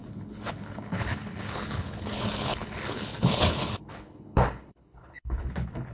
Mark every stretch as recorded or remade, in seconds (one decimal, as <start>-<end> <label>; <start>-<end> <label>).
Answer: 0.0-5.9 remade